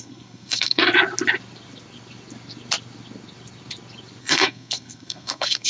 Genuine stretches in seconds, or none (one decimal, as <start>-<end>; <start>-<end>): 0.8-4.2